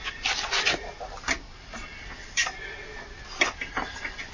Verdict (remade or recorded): recorded